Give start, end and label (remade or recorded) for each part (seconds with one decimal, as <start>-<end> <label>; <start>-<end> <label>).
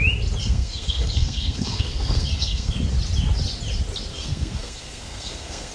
0.0-0.4 recorded; 0.4-2.8 remade; 2.8-4.1 recorded; 4.1-5.7 remade